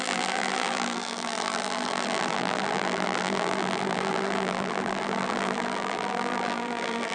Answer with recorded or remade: remade